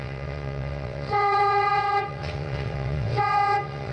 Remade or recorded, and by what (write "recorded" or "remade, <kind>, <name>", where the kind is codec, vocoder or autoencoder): remade, vocoder, WaveNeXt